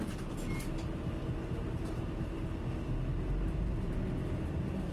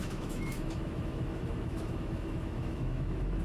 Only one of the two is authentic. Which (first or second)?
first